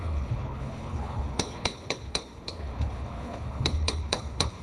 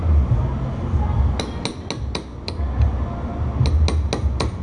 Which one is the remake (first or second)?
first